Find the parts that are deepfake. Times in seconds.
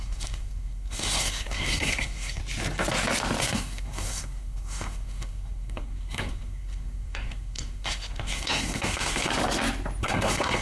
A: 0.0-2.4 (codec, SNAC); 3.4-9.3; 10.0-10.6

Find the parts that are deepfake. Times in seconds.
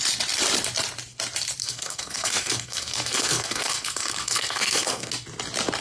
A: 1.6-5.1 (codec, SNAC)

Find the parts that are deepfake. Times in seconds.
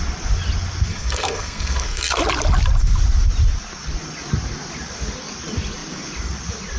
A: 0.9-2.2 (codec, SNAC)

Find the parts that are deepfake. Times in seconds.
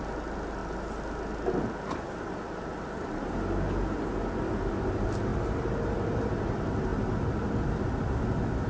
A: none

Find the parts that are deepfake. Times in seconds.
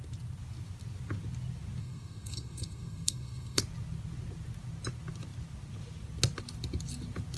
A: 1.8-3.6 (codec, SNAC)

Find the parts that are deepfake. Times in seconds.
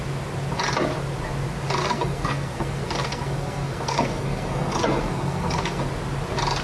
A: 1.8-5.8 (codec, SNAC)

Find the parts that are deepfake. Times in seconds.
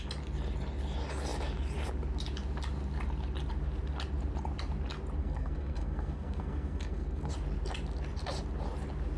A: 5.2-7.3 (codec, SNAC)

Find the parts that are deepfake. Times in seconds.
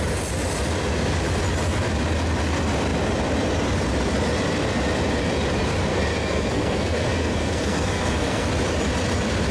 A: 5.9-8.5 (codec, SNAC)